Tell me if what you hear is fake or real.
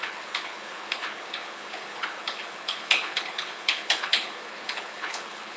fake